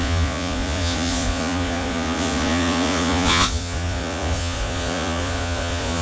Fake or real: fake